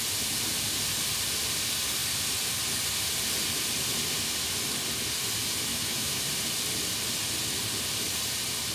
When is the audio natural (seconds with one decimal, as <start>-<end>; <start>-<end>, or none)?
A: 0.0-5.7; 6.2-8.7